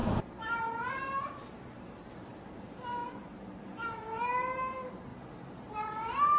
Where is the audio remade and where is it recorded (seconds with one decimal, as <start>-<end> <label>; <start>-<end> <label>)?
0.0-5.1 remade; 5.1-5.7 recorded; 5.7-6.4 remade